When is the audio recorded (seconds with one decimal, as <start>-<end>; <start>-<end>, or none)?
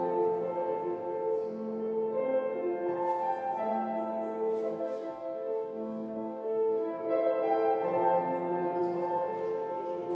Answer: 0.0-4.7; 7.0-10.1